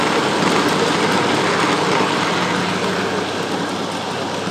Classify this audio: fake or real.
real